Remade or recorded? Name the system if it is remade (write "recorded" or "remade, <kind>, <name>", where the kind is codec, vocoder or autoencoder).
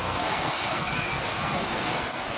remade, codec, SNAC